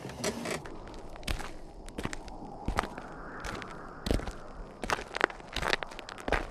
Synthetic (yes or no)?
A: no